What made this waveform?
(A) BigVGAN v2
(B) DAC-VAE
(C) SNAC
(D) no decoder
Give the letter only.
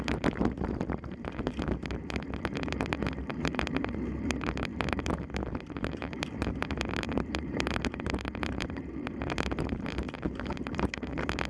A